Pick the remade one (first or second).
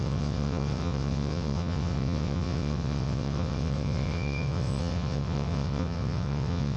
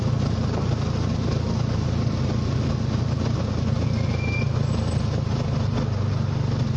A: first